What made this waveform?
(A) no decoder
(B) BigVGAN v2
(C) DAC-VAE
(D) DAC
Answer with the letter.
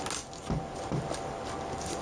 A